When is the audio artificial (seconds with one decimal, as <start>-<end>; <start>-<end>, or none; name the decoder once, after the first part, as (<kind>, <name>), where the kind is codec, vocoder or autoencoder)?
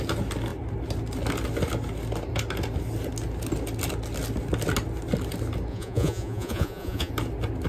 5.7-7.1 (vocoder, Vocos)